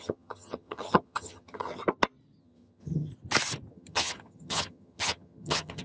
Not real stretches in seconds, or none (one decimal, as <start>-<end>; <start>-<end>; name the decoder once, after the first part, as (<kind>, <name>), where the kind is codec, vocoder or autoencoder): 0.0-1.8 (vocoder, HiFi-GAN); 2.4-3.1; 3.7-5.8